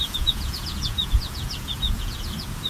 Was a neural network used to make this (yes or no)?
yes